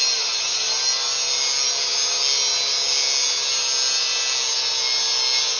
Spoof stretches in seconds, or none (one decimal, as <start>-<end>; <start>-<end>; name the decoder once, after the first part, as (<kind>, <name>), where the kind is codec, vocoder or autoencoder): none